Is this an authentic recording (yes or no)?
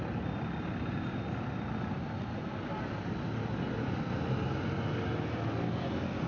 yes